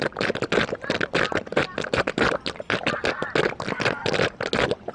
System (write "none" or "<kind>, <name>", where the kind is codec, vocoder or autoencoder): none